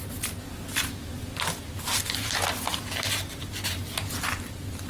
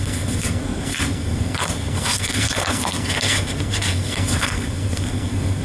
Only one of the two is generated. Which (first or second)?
second